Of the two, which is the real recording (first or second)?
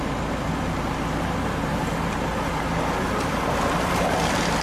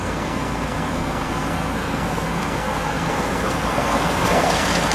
first